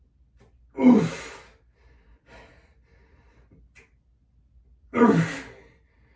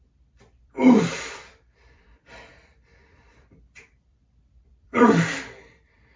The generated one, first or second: second